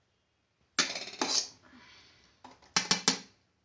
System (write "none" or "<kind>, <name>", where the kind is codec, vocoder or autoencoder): none